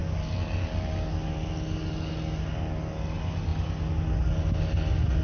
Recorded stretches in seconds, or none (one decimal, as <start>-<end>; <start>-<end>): 0.0-5.2